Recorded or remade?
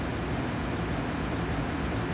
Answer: recorded